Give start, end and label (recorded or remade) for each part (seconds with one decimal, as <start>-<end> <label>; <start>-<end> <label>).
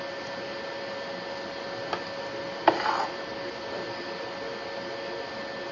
0.0-5.7 recorded